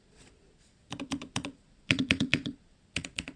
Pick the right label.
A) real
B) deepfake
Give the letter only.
B